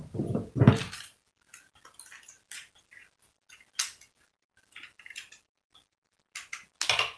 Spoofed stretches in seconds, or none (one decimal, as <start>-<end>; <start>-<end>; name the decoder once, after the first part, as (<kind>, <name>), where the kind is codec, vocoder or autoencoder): none